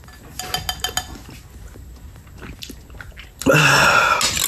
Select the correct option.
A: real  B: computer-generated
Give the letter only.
A